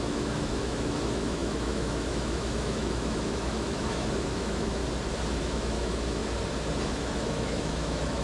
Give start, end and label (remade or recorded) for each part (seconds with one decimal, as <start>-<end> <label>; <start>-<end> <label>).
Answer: 0.0-4.8 remade; 4.8-5.4 recorded; 5.4-6.2 remade; 6.2-6.8 recorded; 6.8-8.2 remade